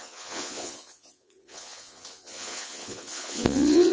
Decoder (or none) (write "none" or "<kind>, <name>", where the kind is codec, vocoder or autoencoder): vocoder, Vocos